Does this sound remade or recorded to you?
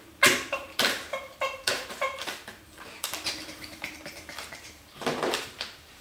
remade